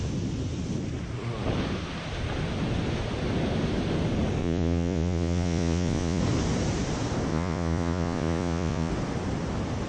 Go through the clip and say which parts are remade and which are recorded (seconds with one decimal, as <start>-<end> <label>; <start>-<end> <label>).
0.0-4.4 recorded; 4.4-6.2 remade; 6.2-7.3 recorded; 7.3-8.9 remade; 8.9-9.9 recorded